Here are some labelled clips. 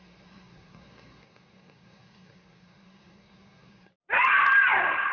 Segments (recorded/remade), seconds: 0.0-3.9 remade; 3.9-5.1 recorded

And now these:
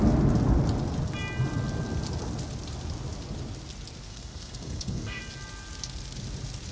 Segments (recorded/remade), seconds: 0.0-4.1 recorded; 4.1-5.2 remade; 5.2-6.7 recorded

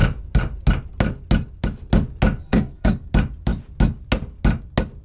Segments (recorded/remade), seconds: 0.0-2.4 recorded; 2.4-3.1 remade; 3.1-5.0 recorded